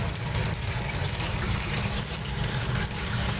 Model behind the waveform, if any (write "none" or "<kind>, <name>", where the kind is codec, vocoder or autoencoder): none